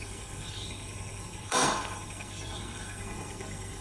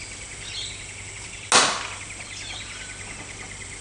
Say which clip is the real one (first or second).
second